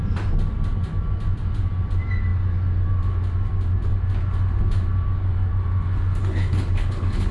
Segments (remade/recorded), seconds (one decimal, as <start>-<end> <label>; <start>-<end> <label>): 0.0-6.2 recorded; 6.2-7.3 remade